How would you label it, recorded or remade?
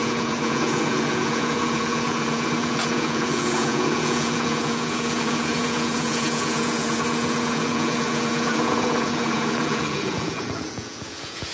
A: remade